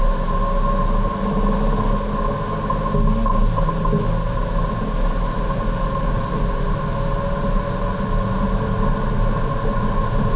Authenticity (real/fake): real